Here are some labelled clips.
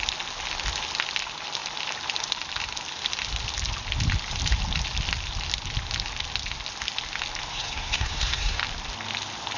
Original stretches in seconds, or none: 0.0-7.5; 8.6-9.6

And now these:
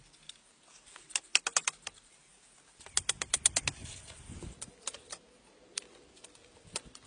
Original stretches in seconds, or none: 0.0-7.1

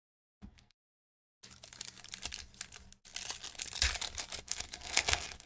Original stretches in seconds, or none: 1.1-4.4

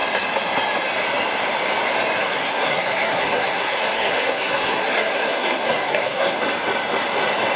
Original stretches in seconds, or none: 0.0-2.2; 6.4-7.6

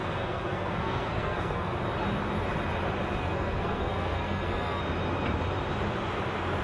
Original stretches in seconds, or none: 1.8-3.2; 4.8-6.6